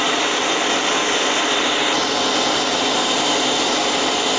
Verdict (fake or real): real